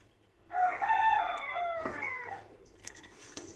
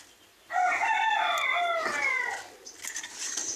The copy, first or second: first